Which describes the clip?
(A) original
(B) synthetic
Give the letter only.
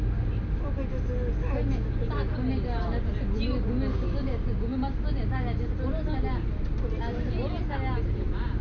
A